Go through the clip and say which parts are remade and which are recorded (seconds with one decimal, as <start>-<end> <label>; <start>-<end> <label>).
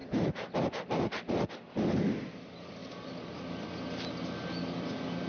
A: 0.0-1.2 remade; 1.2-5.3 recorded